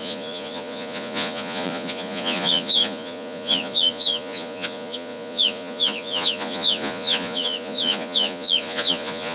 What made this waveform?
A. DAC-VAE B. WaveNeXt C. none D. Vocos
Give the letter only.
D